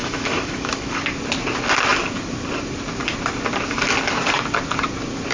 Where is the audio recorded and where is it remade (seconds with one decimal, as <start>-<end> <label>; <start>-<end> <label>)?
0.0-1.0 remade; 1.0-5.3 recorded

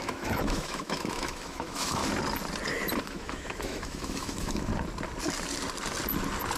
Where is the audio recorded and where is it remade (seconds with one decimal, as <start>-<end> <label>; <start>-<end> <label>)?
0.0-2.0 remade; 2.0-3.0 recorded; 3.0-4.7 remade; 4.7-6.6 recorded

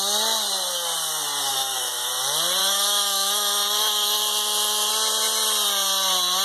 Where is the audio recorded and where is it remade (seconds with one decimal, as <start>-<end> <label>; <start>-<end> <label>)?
0.0-1.5 recorded; 1.5-2.1 remade; 2.1-2.6 recorded; 2.6-4.9 remade; 4.9-6.4 recorded

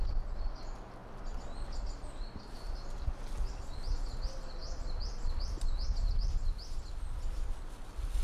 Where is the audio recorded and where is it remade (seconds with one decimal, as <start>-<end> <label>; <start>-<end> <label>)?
0.0-8.2 recorded

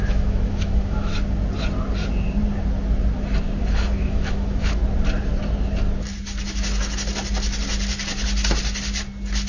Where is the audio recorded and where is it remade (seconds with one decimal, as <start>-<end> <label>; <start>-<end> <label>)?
0.0-1.1 remade; 1.1-3.6 recorded; 3.6-4.8 remade; 4.8-9.5 recorded